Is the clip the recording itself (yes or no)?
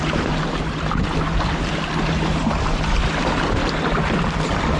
yes